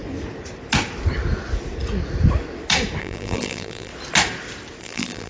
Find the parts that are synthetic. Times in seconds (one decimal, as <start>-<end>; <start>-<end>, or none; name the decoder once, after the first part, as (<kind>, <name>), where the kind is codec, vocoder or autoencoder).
3.0-3.9 (vocoder, BigVGAN v2); 4.8-5.3